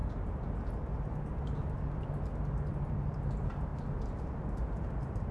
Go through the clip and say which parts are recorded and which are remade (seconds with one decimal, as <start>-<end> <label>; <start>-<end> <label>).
0.0-2.7 recorded; 2.7-3.7 remade; 3.7-4.8 recorded; 4.8-5.3 remade